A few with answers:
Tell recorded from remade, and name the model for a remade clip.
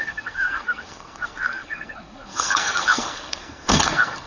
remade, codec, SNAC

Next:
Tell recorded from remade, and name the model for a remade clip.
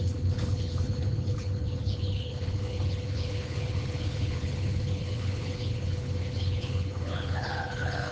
remade, codec, HILCodec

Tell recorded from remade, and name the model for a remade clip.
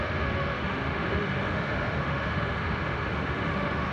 remade, autoencoder, DAC-VAE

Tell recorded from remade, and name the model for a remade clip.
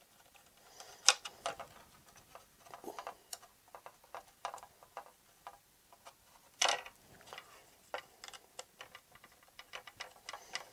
recorded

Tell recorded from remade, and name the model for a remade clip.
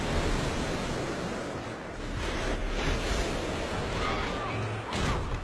recorded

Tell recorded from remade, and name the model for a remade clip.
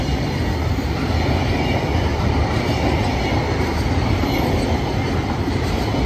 recorded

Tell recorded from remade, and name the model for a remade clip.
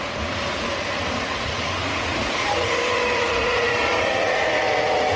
remade, vocoder, Vocos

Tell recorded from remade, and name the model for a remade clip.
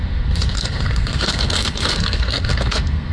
remade, codec, SNAC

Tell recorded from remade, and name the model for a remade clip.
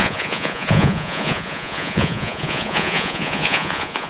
remade, vocoder, Vocos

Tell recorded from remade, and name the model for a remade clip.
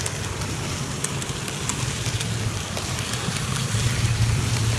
remade, vocoder, BigVGAN v2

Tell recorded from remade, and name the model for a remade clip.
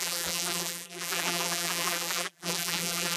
remade, vocoder, BigVGAN v2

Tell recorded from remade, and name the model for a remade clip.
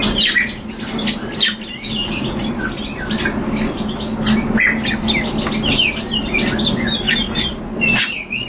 recorded